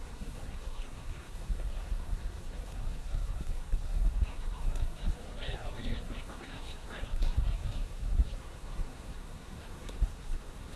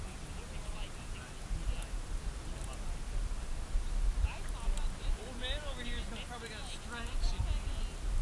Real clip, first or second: second